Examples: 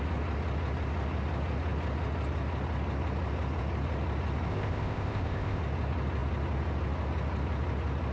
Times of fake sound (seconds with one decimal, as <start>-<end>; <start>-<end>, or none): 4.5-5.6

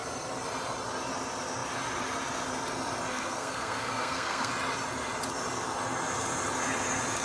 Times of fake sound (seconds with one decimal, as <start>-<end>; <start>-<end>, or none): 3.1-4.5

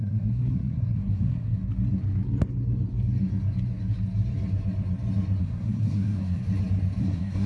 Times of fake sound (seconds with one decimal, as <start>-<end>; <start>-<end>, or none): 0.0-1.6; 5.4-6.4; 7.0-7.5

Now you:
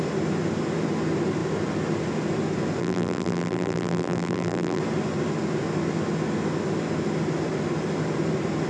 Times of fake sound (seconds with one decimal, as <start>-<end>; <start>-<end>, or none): 2.8-4.8

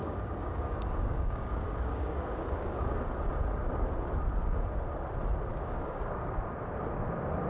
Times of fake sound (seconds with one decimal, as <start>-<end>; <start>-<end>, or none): 0.0-3.1; 5.5-6.2